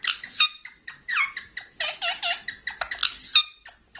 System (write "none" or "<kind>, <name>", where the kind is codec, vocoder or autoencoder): none